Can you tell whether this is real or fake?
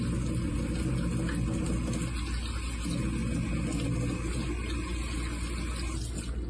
real